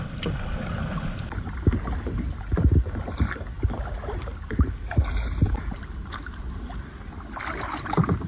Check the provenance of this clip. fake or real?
real